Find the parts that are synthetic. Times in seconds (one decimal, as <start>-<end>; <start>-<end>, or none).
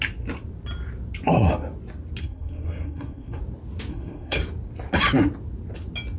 2.2-3.4; 3.9-4.4